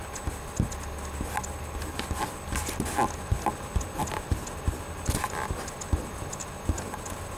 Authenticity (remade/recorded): recorded